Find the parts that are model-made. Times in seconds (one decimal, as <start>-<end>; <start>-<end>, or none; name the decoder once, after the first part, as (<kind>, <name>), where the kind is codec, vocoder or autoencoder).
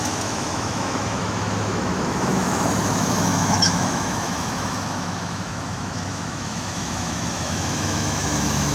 0.0-8.7 (autoencoder, DAC-VAE)